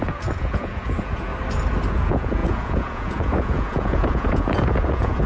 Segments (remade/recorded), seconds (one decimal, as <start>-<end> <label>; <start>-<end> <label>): 0.0-1.3 remade; 1.3-1.9 recorded; 1.9-5.3 remade